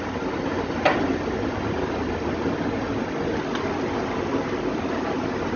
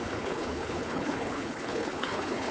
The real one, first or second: first